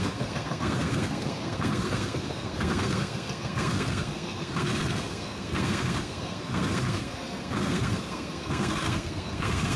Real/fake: fake